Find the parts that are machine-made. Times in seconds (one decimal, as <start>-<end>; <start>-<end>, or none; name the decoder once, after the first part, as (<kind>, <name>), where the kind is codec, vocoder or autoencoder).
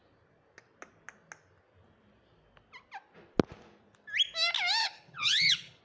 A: 4.8-5.8 (codec, HILCodec)